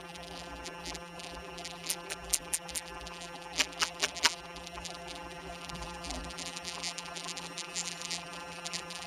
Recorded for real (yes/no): no